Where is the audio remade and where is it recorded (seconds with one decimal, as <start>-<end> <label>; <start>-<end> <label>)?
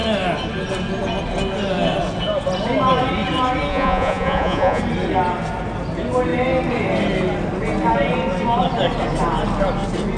0.0-3.7 recorded; 3.7-4.8 remade; 4.8-10.2 recorded